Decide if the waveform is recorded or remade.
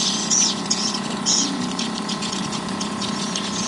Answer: remade